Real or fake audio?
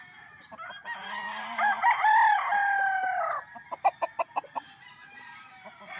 real